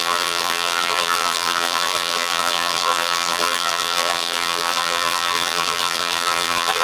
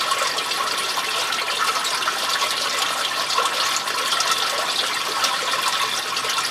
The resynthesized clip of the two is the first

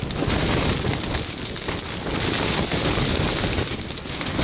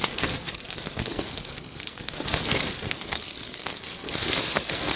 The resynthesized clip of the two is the second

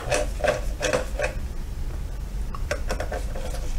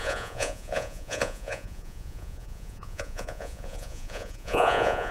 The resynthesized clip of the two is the second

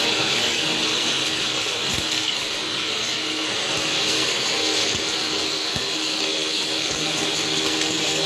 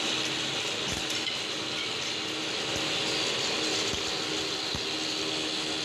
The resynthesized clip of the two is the first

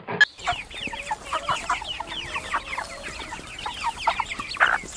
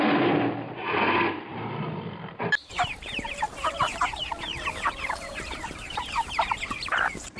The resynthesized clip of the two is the second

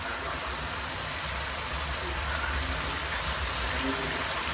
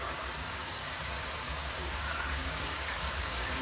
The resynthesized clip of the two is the second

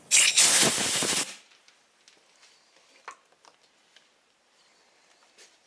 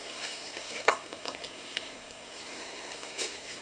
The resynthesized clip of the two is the second